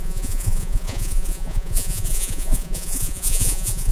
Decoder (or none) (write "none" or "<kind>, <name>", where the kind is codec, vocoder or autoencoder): vocoder, Vocos